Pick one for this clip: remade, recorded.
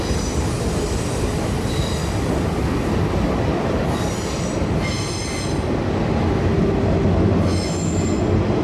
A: recorded